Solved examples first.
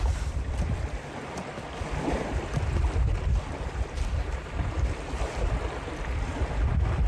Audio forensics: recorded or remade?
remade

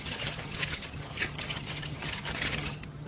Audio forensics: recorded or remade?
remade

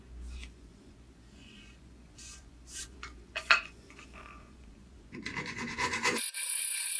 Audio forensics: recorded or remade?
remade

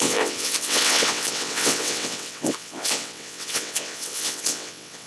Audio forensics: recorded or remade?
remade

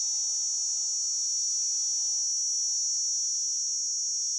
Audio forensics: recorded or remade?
recorded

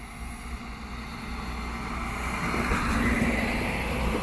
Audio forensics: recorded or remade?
recorded